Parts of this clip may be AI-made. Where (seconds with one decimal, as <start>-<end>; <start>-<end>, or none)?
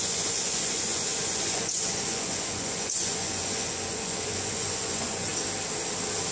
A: 0.0-5.3